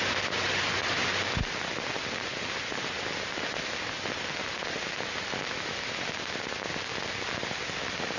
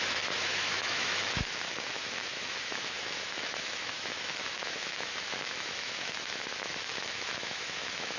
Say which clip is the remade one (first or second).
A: second